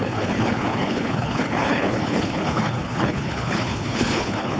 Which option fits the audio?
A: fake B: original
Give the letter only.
A